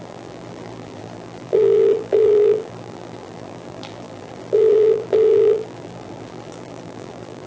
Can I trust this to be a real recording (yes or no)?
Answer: no